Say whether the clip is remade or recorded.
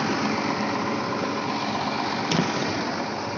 recorded